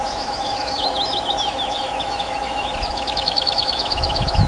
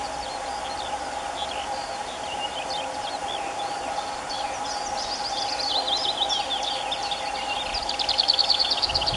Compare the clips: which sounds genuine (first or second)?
second